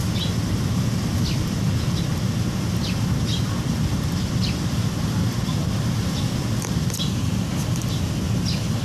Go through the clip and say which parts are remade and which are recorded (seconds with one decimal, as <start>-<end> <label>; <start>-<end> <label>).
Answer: 0.0-8.8 recorded